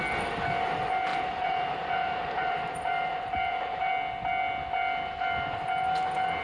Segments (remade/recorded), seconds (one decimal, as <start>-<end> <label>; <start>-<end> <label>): 0.0-1.1 recorded; 1.1-3.9 remade; 3.9-6.4 recorded